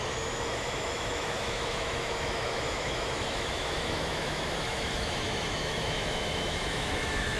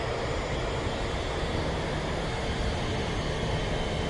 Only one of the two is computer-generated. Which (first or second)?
first